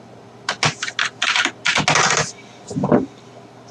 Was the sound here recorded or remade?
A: recorded